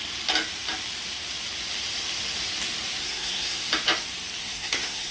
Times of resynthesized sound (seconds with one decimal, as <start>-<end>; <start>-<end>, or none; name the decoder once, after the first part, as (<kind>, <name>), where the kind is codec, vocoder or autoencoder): 3.0-3.7 (codec, SNAC); 4.4-5.1